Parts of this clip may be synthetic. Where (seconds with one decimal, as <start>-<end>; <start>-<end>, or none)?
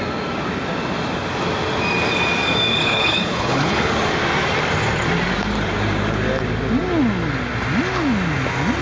2.8-3.9